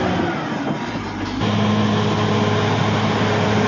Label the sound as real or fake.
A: real